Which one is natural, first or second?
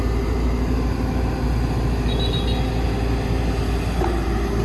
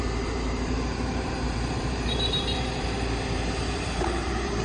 first